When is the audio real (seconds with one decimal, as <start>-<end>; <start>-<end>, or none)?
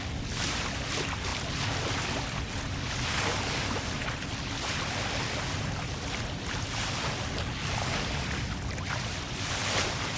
0.0-10.2